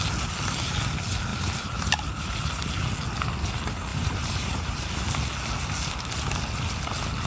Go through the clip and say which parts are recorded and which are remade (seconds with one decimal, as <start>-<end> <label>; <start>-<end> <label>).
0.0-1.3 recorded; 1.3-2.2 remade; 2.2-3.9 recorded; 3.9-4.9 remade; 4.9-7.3 recorded